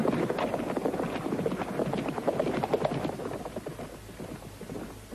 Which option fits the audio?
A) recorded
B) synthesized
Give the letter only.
A